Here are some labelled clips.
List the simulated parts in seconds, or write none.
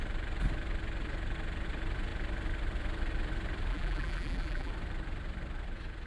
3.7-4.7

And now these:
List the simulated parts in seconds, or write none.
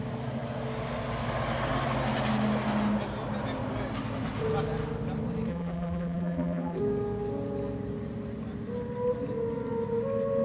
5.5-6.8